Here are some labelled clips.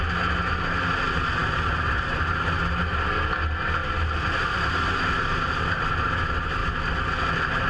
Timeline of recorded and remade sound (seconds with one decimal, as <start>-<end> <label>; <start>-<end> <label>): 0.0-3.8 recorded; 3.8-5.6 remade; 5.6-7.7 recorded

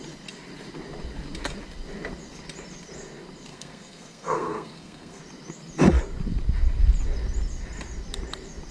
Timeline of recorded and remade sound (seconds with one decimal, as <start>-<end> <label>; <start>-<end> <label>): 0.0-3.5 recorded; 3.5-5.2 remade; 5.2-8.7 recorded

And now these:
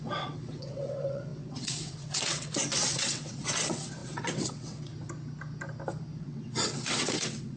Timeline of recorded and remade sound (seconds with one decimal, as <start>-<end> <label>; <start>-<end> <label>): 0.0-4.9 remade; 4.9-6.2 recorded; 6.2-7.6 remade